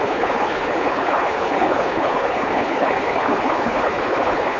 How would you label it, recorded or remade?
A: remade